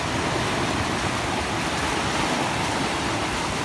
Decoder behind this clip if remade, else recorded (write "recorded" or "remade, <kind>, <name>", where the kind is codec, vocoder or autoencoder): recorded